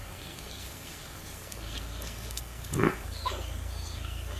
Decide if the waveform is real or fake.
fake